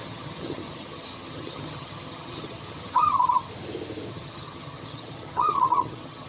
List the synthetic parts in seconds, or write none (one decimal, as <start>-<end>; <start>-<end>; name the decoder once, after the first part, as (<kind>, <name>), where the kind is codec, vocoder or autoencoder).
0.0-3.5 (vocoder, HiFi-GAN); 4.1-6.3